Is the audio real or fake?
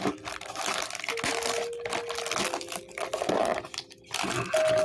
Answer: real